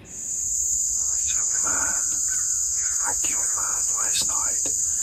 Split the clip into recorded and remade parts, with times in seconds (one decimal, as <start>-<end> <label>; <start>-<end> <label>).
0.0-0.4 recorded; 0.4-1.6 remade; 1.6-2.6 recorded; 2.6-4.3 remade; 4.3-5.0 recorded